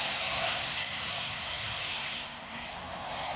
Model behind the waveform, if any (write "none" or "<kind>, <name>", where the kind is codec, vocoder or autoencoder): codec, SNAC